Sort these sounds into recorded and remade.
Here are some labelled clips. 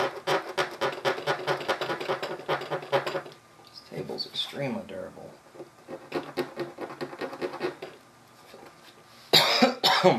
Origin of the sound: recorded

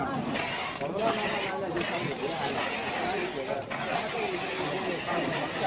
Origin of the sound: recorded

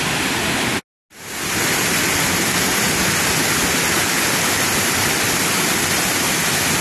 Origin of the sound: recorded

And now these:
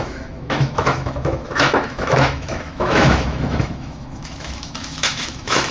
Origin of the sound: remade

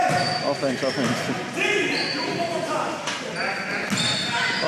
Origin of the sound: recorded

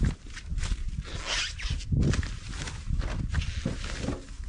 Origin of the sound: recorded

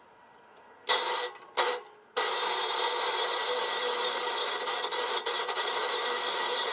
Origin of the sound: recorded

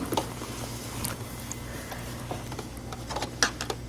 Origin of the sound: recorded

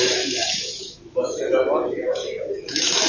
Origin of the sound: remade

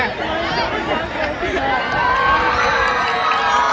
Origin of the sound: recorded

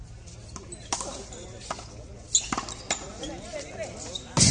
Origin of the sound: recorded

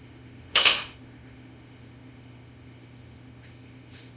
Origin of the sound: remade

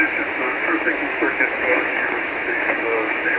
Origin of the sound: remade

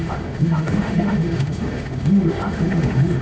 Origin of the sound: remade